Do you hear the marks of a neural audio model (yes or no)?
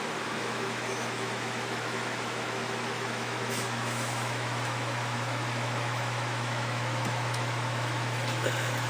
yes